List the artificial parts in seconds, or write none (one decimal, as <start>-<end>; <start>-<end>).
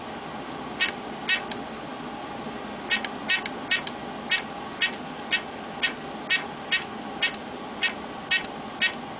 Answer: none